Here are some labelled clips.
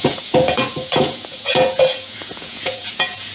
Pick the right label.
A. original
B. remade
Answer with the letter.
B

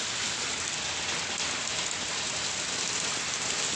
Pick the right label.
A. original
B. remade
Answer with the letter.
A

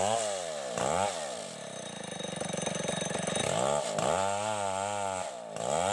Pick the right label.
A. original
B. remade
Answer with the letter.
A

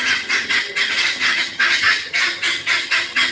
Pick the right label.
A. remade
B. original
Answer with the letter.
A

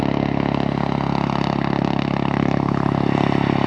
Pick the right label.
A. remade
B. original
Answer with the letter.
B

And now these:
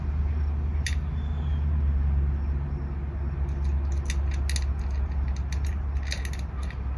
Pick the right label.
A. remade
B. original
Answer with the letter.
B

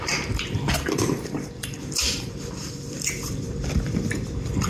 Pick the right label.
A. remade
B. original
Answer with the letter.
A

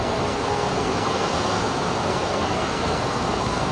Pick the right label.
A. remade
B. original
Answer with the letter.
A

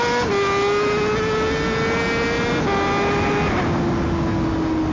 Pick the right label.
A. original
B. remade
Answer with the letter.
A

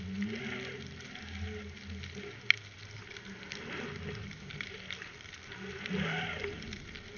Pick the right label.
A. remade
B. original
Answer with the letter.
B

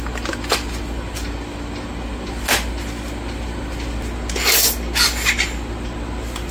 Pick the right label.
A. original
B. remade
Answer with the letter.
A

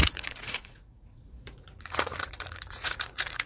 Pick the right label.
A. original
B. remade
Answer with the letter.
B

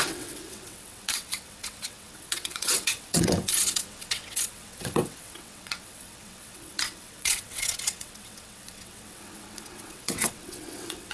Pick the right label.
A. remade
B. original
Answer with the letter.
A